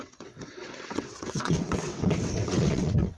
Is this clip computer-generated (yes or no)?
yes